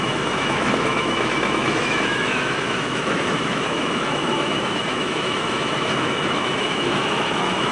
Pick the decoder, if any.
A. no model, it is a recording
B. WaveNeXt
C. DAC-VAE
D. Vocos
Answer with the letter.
C